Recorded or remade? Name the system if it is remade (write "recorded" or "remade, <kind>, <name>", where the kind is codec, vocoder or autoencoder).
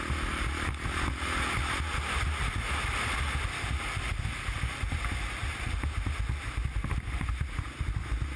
recorded